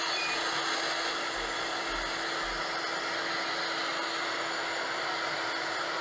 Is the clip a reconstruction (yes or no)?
no